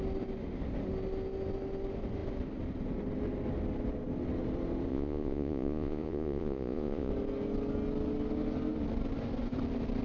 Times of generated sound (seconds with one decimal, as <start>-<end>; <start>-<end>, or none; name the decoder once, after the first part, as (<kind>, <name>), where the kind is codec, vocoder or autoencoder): 4.9-7.1 (vocoder, Vocos)